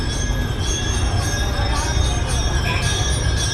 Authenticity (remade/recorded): recorded